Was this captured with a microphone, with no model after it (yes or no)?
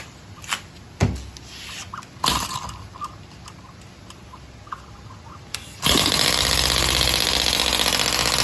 yes